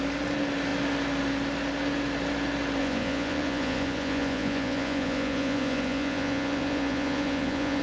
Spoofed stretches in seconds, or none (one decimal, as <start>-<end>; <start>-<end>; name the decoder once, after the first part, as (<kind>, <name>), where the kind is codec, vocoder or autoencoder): 2.8-7.8 (vocoder, Vocos)